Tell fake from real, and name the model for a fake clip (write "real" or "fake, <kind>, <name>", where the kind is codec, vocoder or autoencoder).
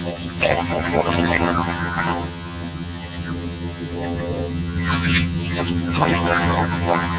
fake, vocoder, HiFi-GAN